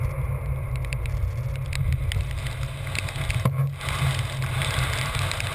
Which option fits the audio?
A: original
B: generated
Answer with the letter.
A